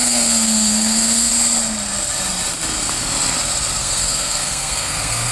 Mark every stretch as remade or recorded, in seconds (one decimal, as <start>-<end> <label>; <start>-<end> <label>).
0.0-1.3 remade; 1.3-3.8 recorded; 3.8-5.3 remade